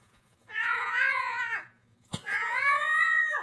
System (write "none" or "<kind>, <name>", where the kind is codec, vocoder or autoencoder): vocoder, Vocos